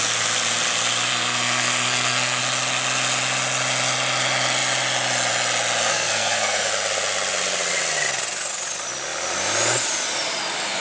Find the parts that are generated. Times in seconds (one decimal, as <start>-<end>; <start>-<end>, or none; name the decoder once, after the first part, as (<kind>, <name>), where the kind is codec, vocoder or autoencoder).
1.1-2.4 (codec, SNAC); 5.9-6.7